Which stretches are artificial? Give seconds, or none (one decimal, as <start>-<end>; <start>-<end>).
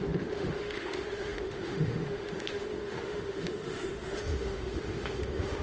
0.0-5.6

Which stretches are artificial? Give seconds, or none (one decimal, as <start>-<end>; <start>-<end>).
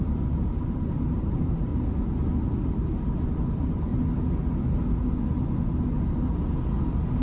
0.0-1.7; 3.5-3.9